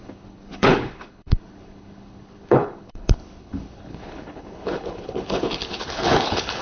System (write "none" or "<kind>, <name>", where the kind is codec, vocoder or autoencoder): codec, HILCodec